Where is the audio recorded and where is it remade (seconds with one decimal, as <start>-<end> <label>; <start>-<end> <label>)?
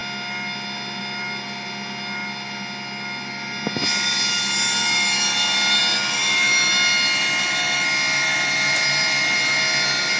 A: 0.0-10.2 recorded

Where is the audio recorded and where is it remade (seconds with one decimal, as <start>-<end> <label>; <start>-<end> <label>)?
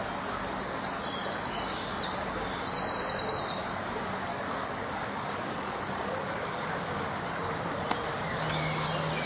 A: 0.0-4.3 recorded; 4.3-7.2 remade; 7.2-9.3 recorded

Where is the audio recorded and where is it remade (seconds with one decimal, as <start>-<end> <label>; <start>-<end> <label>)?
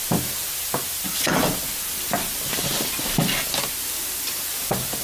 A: 0.0-5.0 recorded